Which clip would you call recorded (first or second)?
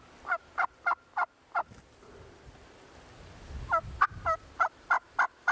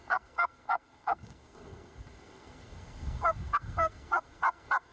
first